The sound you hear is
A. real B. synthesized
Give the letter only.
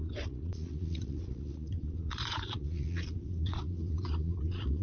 B